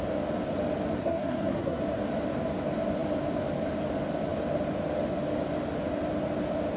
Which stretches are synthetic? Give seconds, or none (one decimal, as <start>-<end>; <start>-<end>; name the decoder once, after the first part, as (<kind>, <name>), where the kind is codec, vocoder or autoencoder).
1.0-1.8 (codec, SNAC)